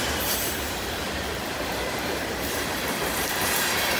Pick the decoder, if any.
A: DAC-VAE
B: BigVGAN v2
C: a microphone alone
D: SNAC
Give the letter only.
B